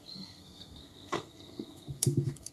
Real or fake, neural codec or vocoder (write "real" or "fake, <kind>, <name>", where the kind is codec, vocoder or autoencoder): fake, codec, SNAC